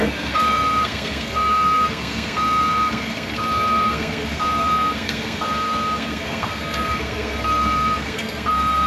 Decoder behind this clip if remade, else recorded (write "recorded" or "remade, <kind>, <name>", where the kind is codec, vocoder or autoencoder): remade, codec, SNAC